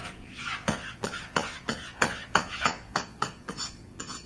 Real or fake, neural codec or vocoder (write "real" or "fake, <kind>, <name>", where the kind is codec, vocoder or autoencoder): fake, vocoder, Vocos